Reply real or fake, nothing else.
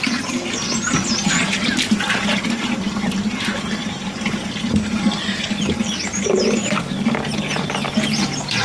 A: real